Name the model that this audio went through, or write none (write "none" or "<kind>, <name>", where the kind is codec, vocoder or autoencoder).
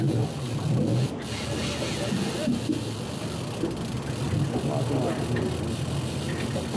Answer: none